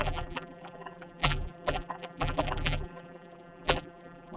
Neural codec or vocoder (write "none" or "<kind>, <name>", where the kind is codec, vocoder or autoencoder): vocoder, BigVGAN v2